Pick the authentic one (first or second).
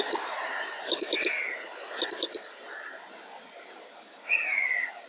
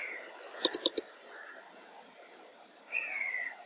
first